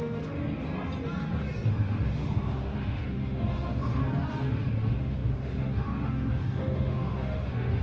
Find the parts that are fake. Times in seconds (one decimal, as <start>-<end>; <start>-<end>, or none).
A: 0.0-0.4; 1.7-4.0; 4.5-7.8